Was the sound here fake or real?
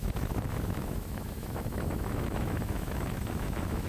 fake